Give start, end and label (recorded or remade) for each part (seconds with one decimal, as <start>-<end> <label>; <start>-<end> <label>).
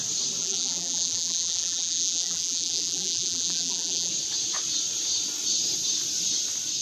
0.0-0.4 recorded; 0.4-4.1 remade; 4.1-6.8 recorded